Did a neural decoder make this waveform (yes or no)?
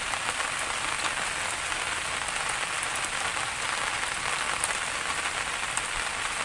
no